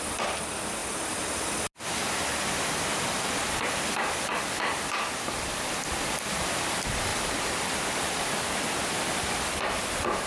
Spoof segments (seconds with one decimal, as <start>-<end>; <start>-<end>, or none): none